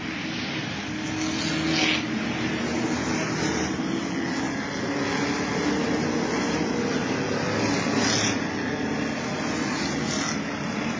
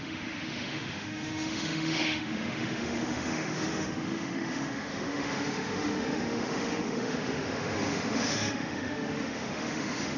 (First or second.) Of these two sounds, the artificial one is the second